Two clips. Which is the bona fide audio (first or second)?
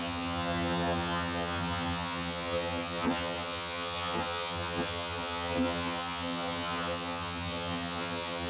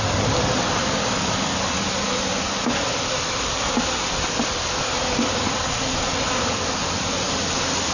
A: second